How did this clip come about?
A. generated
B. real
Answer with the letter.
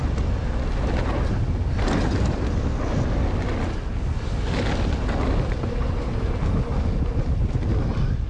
B